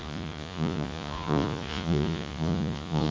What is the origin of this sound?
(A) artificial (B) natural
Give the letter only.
A